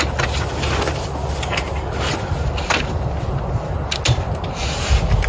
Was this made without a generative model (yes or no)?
yes